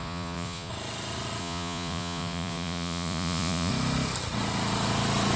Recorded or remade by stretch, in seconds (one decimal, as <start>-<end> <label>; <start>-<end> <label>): 0.0-0.7 remade; 0.7-1.4 recorded; 1.4-3.7 remade; 3.7-5.4 recorded